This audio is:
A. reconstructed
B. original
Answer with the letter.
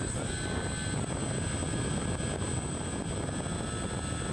B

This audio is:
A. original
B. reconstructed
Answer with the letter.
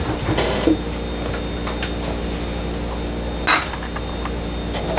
A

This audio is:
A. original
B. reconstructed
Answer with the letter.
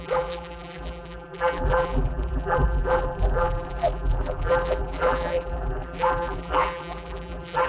B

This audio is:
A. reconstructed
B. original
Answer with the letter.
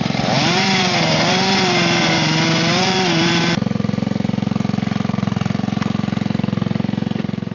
A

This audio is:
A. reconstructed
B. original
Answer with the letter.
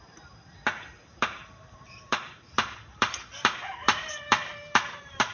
A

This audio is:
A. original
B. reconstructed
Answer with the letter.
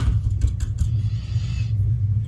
A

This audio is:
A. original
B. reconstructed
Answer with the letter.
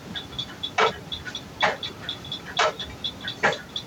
A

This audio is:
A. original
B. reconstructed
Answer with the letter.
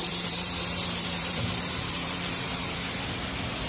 B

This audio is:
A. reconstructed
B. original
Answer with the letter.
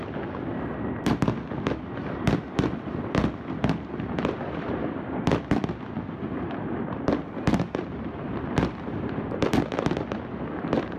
A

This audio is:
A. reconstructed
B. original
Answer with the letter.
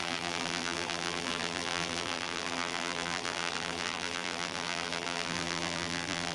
A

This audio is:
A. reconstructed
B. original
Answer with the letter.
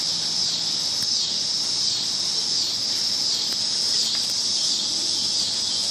B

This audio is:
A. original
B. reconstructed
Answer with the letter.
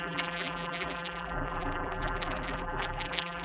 B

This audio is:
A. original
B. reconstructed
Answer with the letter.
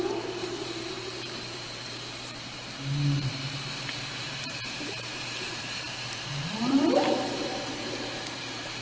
B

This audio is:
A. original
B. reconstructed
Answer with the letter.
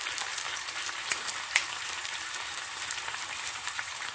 B